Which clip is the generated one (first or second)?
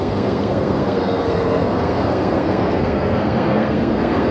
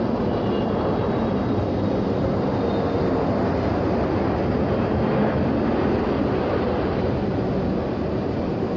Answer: first